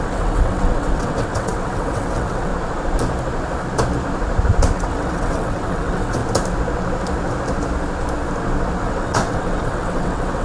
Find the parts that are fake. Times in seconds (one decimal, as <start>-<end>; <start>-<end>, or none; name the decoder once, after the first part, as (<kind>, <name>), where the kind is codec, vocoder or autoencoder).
0.0-2.5 (vocoder, WaveNeXt); 4.7-6.2; 8.8-10.4